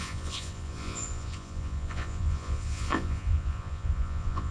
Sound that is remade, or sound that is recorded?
remade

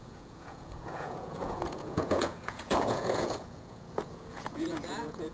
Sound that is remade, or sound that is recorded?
remade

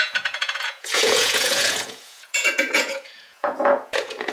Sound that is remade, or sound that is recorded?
remade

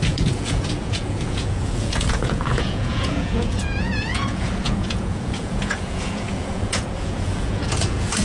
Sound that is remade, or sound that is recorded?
remade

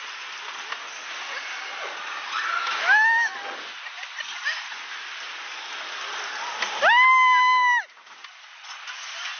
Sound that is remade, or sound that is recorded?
recorded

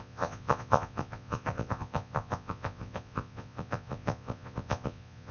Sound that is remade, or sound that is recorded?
remade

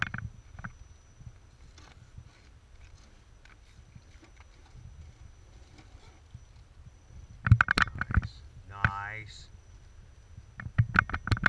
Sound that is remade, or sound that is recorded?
recorded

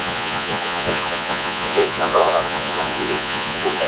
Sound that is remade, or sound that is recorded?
remade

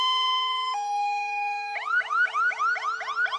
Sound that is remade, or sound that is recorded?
recorded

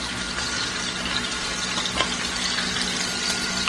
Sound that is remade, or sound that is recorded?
recorded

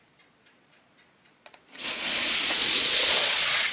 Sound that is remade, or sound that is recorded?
remade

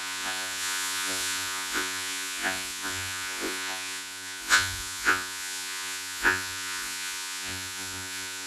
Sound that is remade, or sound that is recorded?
remade